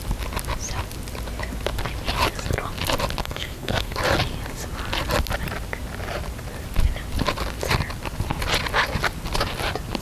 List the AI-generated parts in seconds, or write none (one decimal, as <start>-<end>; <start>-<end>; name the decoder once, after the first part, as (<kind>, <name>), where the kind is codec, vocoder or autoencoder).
3.2-4.0 (codec, SNAC)